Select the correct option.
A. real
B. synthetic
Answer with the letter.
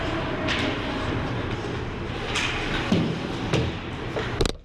A